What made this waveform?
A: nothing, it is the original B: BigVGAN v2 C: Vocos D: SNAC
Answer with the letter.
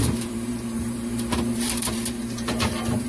B